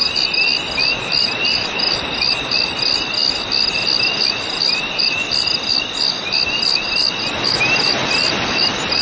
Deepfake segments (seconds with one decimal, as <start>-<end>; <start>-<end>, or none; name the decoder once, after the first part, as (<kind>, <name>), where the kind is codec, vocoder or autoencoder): none